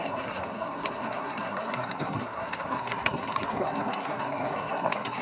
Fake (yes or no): yes